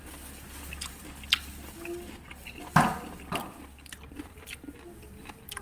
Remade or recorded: recorded